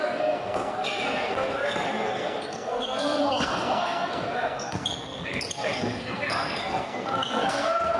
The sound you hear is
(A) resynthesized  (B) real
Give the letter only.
A